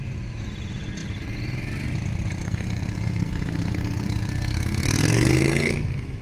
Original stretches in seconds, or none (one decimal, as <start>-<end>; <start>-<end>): 0.0-2.4